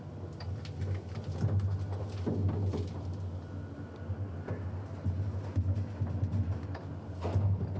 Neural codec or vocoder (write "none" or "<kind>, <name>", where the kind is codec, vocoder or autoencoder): none